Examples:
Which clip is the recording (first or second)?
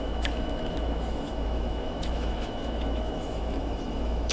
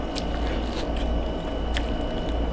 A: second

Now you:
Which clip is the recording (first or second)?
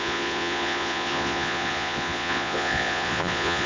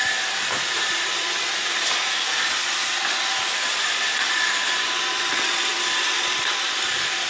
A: second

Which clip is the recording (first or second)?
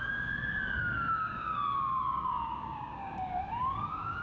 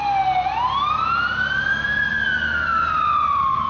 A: second